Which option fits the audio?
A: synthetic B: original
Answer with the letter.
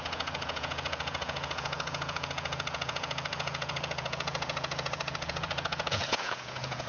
A